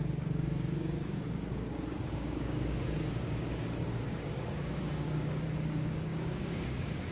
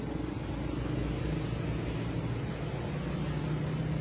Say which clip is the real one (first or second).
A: second